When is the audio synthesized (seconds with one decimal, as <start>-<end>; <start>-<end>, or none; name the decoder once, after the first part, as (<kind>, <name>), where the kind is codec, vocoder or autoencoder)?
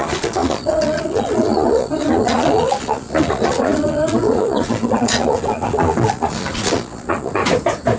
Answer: 0.0-7.4 (vocoder, Vocos)